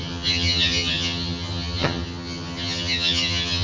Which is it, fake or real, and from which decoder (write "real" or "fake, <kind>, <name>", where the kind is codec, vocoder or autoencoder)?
fake, vocoder, HiFi-GAN